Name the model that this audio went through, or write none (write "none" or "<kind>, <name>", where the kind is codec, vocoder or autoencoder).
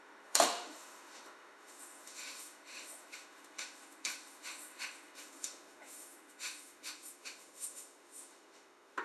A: autoencoder, DAC-VAE